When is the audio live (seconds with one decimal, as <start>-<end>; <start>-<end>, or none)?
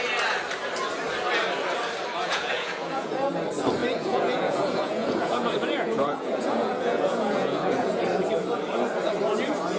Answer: 0.0-2.2; 3.3-3.8; 8.0-9.8